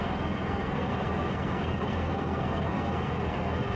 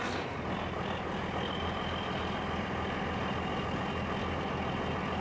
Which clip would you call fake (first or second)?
first